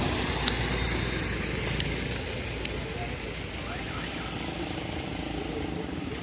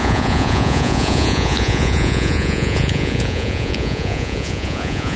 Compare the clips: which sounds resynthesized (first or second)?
second